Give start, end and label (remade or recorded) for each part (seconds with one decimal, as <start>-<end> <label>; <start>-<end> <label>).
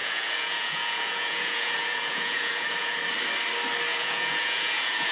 0.0-3.0 remade; 3.0-3.9 recorded; 3.9-5.1 remade